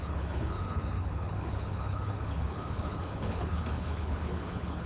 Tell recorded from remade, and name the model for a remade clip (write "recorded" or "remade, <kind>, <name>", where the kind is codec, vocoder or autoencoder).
remade, codec, HILCodec